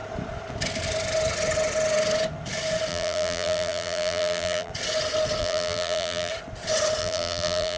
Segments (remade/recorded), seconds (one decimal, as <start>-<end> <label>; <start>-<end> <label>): 0.0-2.9 recorded; 2.9-4.7 remade; 4.7-5.4 recorded; 5.4-6.3 remade; 6.3-7.0 recorded; 7.0-7.8 remade